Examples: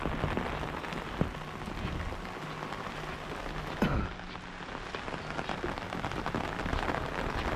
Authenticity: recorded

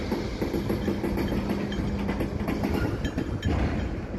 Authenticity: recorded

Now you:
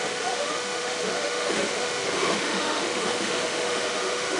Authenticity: remade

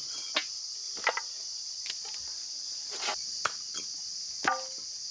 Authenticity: recorded